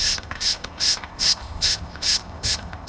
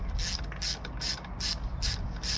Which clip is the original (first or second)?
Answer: second